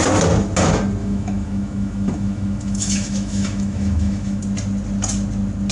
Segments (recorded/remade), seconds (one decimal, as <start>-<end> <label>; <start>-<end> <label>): 0.0-1.0 recorded; 1.0-4.4 remade; 4.4-5.7 recorded